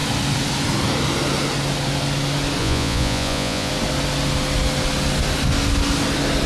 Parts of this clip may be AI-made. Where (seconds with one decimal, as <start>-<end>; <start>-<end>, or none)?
2.6-3.7